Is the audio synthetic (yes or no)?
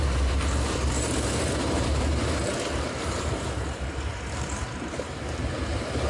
yes